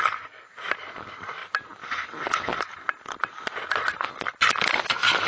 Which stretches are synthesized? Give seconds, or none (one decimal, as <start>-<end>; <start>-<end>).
0.0-1.4; 4.6-5.3